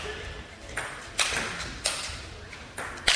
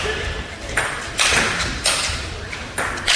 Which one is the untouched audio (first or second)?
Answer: first